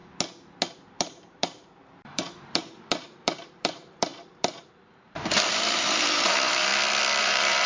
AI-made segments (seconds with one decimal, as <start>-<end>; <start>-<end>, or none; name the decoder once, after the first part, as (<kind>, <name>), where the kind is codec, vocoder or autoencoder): 0.7-6.7 (vocoder, BigVGAN v2); 7.2-7.7